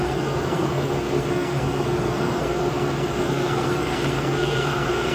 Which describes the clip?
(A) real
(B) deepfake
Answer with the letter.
B